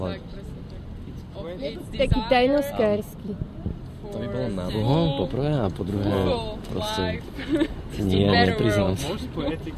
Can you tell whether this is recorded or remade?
recorded